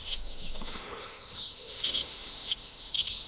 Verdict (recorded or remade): remade